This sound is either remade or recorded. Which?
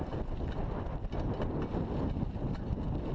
recorded